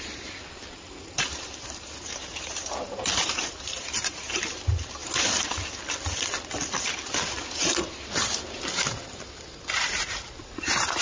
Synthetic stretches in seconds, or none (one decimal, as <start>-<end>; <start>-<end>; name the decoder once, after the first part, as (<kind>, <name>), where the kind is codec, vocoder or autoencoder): 0.0-5.0 (vocoder, BigVGAN v2); 9.0-11.0